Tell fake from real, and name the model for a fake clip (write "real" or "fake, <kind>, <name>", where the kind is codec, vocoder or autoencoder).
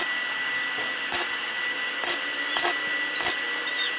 real